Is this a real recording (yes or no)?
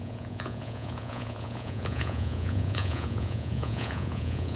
no